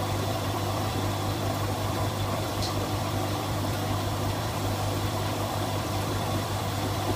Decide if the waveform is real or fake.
fake